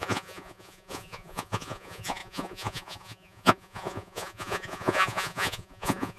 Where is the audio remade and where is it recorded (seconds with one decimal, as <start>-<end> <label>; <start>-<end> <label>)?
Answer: 0.0-6.2 remade